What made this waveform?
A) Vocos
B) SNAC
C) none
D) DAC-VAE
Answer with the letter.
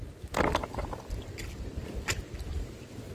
C